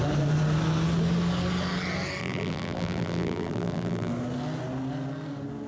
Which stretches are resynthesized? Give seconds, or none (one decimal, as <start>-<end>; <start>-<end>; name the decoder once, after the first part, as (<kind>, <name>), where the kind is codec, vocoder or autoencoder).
2.2-4.1 (vocoder, BigVGAN v2)